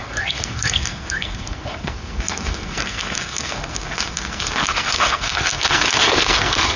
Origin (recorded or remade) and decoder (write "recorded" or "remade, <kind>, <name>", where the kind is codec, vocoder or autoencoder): remade, codec, SNAC